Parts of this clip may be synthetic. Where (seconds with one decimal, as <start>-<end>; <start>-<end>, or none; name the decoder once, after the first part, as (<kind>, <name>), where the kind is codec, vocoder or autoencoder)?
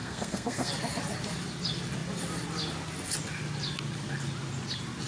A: 0.0-0.7 (codec, SNAC)